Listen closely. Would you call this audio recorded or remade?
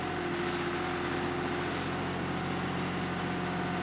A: recorded